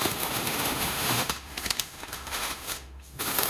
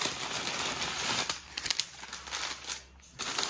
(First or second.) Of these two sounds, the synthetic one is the first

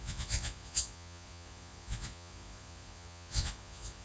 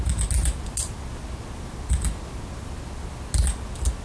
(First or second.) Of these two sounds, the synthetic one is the first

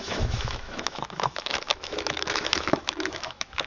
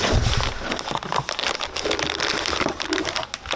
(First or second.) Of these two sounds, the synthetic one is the first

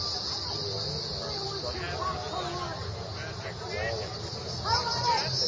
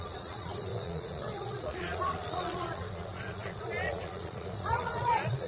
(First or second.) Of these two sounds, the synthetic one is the second